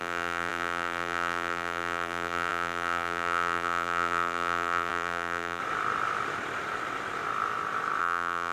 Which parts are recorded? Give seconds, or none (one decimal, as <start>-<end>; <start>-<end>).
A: 5.6-8.0